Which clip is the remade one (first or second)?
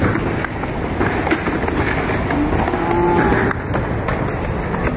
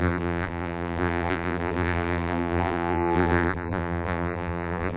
second